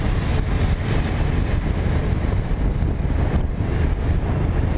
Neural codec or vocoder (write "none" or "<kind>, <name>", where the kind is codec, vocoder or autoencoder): vocoder, BigVGAN v2